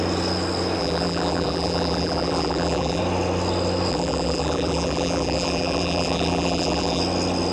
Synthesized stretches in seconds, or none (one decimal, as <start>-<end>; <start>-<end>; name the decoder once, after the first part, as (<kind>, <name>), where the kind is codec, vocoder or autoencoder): 0.8-3.0 (vocoder, BigVGAN v2); 3.9-7.0